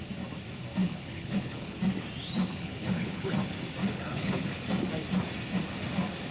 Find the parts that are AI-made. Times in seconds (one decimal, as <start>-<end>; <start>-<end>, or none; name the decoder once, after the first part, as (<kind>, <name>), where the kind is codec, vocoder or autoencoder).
0.8-1.8 (codec, HILCodec); 2.5-3.3; 3.8-4.6